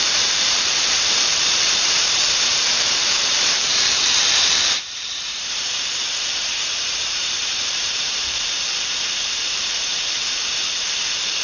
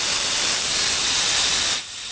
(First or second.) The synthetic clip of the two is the first